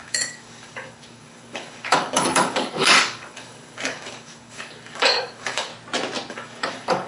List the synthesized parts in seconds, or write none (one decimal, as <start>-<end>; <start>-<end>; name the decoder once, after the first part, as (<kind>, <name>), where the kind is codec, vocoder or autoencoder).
0.0-5.7 (codec, DAC); 6.3-7.1